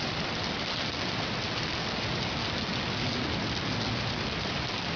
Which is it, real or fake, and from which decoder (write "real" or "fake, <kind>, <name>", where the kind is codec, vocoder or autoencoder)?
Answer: real